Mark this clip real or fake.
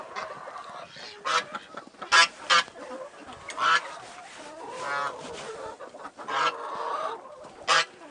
real